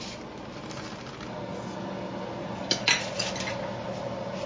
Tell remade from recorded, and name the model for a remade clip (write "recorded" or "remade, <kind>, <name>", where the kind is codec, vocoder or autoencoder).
recorded